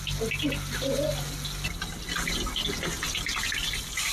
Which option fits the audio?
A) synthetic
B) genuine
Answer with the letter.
B